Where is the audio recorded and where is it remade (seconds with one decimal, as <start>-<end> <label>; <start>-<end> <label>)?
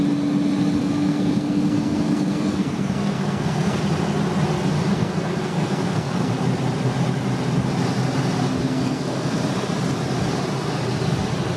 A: 0.0-0.8 recorded; 0.8-3.8 remade; 3.8-4.9 recorded; 4.9-6.3 remade; 6.3-8.6 recorded; 8.6-9.4 remade; 9.4-11.6 recorded